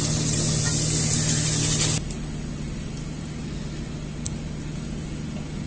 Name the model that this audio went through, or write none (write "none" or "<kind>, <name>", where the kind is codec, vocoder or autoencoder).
none